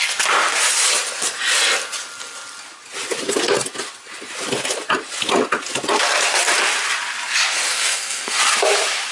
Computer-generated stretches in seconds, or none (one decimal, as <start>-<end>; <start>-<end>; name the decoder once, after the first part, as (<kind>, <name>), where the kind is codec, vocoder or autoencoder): 7.7-8.4 (codec, SNAC)

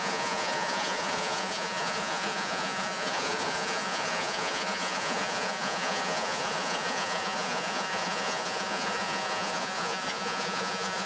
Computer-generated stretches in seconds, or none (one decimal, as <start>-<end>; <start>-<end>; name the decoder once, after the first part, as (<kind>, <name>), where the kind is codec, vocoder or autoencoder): 0.0-11.1 (vocoder, Vocos)

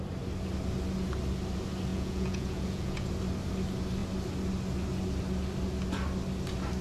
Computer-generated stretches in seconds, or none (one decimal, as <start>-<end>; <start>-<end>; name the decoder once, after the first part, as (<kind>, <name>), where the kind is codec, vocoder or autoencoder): 1.9-3.1 (vocoder, Vocos)

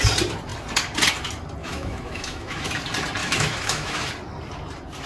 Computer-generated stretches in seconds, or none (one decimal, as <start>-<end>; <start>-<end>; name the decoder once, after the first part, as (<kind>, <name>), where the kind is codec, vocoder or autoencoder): 1.6-2.8 (autoencoder, DAC-VAE); 3.2-4.1

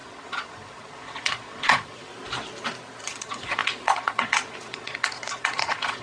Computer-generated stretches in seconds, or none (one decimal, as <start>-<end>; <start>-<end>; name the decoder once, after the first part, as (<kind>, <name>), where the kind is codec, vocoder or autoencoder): 0.0-2.1 (vocoder, Vocos); 3.0-6.0